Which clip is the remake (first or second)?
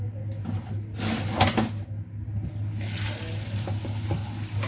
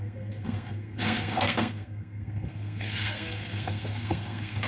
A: second